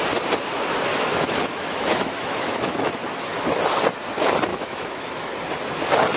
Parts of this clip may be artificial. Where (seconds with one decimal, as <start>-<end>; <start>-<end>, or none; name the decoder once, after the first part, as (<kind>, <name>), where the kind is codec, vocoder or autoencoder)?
0.9-2.9 (autoencoder, DAC-VAE); 4.5-5.3